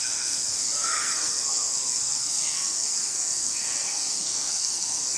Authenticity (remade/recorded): remade